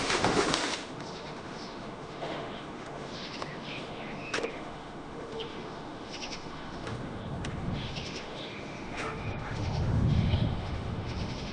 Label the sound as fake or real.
fake